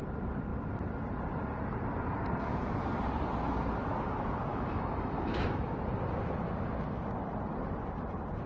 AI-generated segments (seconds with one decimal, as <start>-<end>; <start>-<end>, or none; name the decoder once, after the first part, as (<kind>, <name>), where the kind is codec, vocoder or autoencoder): 4.5-5.7 (autoencoder, DAC-VAE)